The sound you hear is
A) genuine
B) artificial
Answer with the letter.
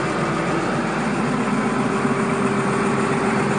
A